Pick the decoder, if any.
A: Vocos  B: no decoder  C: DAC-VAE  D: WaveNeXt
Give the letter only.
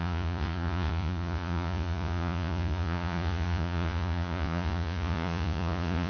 A